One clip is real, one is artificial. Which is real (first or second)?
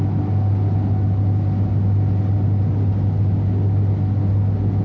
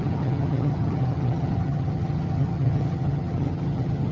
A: first